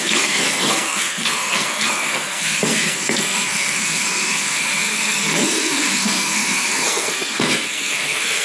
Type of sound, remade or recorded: remade